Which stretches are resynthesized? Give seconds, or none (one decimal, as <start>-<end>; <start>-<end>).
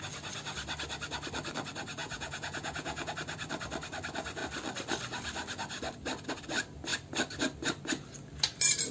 2.0-3.1